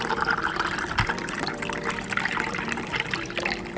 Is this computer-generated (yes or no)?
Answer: no